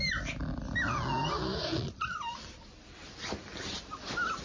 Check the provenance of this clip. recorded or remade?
recorded